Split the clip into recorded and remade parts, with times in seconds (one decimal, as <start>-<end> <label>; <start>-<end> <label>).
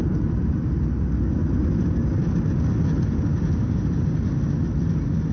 0.0-5.3 recorded